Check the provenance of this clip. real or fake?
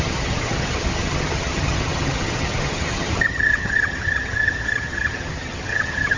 fake